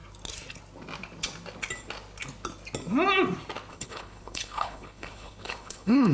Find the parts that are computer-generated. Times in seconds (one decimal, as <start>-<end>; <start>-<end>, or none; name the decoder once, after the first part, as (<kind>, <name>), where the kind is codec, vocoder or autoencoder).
3.7-6.1 (codec, HILCodec)